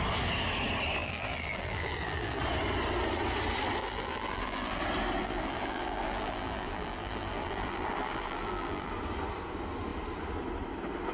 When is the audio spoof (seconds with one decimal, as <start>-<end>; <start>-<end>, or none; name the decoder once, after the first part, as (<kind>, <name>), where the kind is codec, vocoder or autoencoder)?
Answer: 1.0-2.4 (vocoder, BigVGAN v2); 3.8-4.8; 5.2-8.9